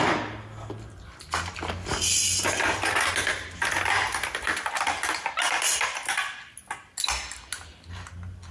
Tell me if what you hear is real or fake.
real